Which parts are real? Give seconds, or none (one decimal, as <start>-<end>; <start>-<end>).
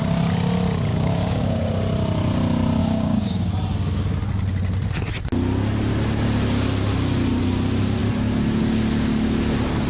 0.0-0.9; 1.7-2.8; 3.5-9.9